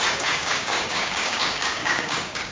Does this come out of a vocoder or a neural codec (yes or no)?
yes